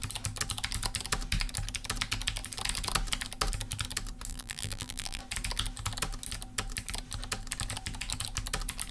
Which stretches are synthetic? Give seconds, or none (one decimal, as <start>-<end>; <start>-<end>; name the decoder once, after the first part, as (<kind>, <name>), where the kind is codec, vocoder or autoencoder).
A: 4.3-5.2 (vocoder, BigVGAN v2)